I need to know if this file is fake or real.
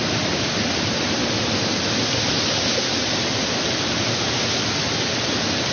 real